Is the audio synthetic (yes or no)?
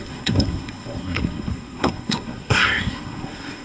yes